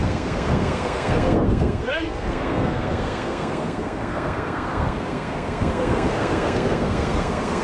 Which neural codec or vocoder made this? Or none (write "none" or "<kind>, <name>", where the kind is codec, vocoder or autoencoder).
codec, SNAC